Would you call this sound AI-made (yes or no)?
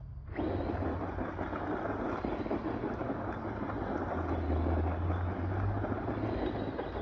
no